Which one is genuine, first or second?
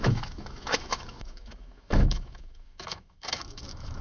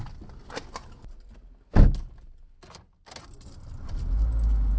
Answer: second